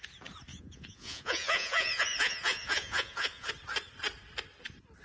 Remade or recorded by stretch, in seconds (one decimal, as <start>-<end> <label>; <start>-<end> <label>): 0.0-0.5 recorded; 0.5-3.5 remade; 3.5-5.0 recorded